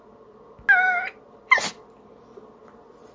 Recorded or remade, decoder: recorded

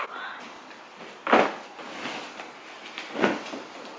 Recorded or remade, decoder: recorded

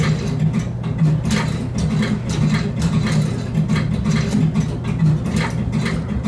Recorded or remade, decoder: recorded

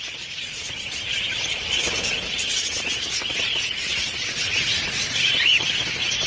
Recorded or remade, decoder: recorded